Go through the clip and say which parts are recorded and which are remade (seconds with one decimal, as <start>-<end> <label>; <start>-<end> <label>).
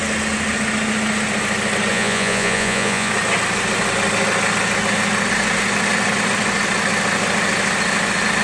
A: 0.0-1.9 recorded; 1.9-3.1 remade; 3.1-8.4 recorded